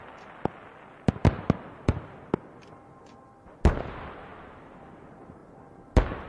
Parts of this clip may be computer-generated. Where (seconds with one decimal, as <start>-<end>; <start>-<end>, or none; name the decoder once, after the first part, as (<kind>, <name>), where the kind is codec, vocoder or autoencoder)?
none